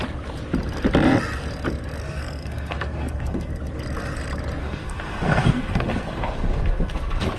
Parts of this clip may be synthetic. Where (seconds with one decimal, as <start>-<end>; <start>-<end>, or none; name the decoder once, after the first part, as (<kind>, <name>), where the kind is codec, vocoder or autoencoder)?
2.0-3.5 (codec, SNAC); 4.6-7.4